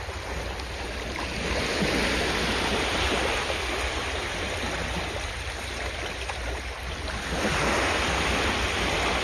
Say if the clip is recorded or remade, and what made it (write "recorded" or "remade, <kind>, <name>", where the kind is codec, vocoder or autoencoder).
recorded